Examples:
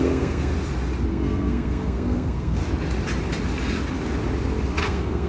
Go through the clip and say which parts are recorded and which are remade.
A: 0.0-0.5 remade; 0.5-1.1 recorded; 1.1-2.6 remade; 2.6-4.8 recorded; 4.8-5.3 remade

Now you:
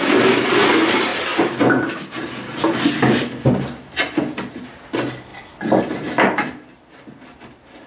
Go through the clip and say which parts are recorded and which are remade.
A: 0.0-7.9 recorded

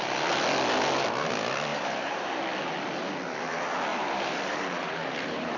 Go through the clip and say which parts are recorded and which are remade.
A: 0.0-1.7 recorded; 1.7-2.4 remade; 2.4-3.9 recorded; 3.9-5.6 remade

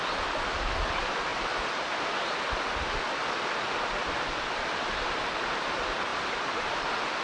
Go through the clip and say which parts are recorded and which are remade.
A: 0.0-7.2 recorded

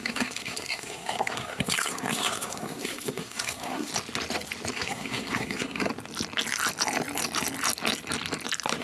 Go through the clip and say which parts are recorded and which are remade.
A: 0.0-3.9 remade; 3.9-4.7 recorded; 4.7-5.9 remade; 5.9-8.8 recorded

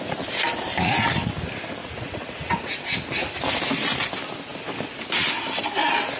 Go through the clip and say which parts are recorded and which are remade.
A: 0.0-1.8 recorded; 1.8-2.8 remade; 2.8-6.2 recorded